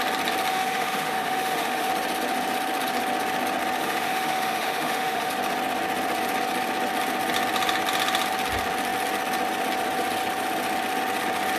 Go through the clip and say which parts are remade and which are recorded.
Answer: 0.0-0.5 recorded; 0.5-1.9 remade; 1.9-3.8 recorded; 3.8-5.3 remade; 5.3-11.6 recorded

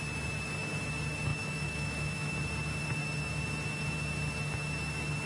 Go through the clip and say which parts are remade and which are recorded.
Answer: 0.0-1.3 recorded; 1.3-2.3 remade; 2.3-5.3 recorded

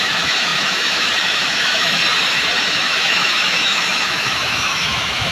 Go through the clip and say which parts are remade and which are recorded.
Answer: 0.0-2.0 remade; 2.0-2.6 recorded; 2.6-5.3 remade

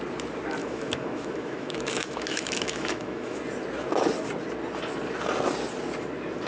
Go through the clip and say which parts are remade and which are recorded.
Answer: 0.0-0.6 recorded; 0.6-3.4 remade; 3.4-6.5 recorded